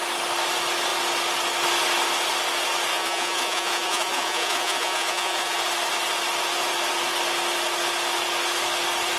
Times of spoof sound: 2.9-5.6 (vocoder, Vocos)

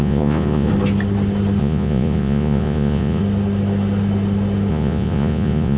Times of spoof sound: 0.0-0.7 (vocoder, Vocos); 1.6-3.2; 4.7-5.8

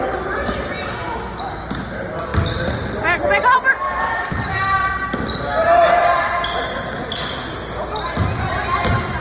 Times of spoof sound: none

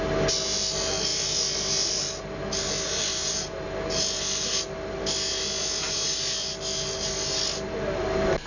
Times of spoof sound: none

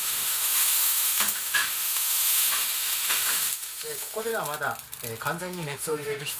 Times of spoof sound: 0.0-4.3 (autoencoder, DAC-VAE); 5.4-6.4

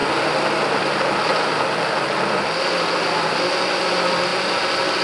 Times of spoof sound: none

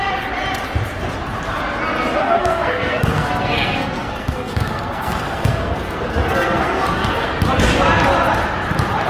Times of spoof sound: 2.2-7.3 (codec, SNAC)